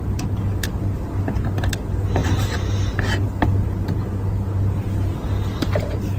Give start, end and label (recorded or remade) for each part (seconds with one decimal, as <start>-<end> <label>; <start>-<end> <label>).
0.0-6.2 recorded